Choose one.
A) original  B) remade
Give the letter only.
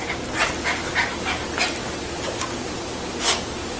A